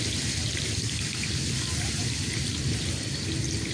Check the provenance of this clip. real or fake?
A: real